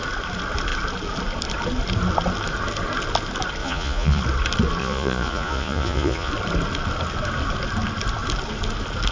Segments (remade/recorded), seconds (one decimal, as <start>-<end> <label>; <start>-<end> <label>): 0.0-3.6 recorded; 3.6-4.2 remade; 4.2-4.8 recorded; 4.8-6.3 remade; 6.3-9.1 recorded